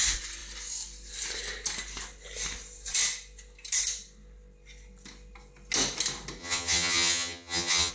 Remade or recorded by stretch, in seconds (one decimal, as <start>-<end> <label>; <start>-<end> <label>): 0.0-6.4 recorded; 6.4-7.9 remade